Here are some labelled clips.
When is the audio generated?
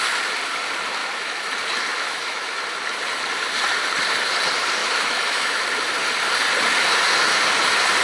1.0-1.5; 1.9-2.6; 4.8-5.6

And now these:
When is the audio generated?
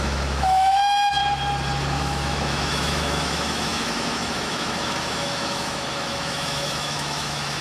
0.0-1.2; 2.0-7.6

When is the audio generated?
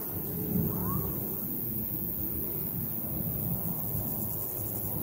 none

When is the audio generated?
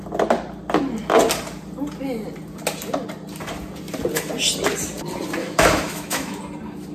5.4-6.4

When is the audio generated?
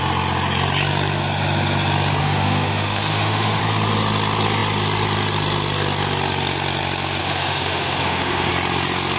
2.2-3.6; 7.2-8.5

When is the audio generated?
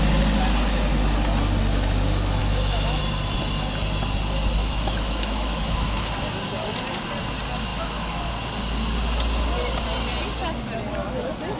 2.4-3.0; 4.6-6.1; 7.7-8.3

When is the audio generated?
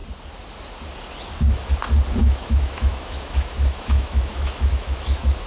2.2-5.5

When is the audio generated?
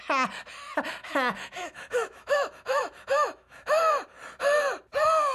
1.0-3.8